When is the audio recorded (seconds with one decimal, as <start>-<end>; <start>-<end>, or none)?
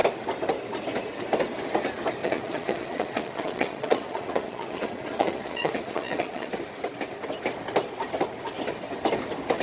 0.0-2.2; 6.5-9.6